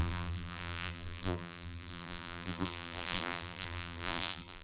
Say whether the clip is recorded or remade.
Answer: remade